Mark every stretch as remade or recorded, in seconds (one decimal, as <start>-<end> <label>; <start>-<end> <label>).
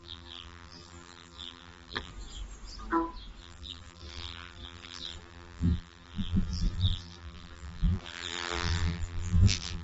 0.0-2.1 remade; 2.1-3.4 recorded; 3.4-9.8 remade